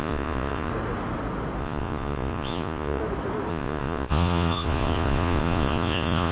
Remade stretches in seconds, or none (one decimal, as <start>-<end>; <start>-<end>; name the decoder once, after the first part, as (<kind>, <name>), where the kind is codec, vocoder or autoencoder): 0.0-0.7 (vocoder, Vocos); 1.6-3.0; 3.5-6.3